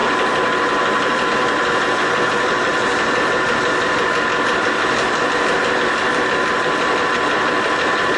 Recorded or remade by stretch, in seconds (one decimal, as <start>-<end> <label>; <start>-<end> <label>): 0.0-8.2 recorded